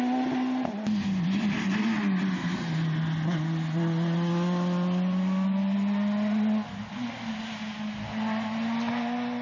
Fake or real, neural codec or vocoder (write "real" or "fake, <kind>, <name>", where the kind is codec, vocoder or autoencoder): real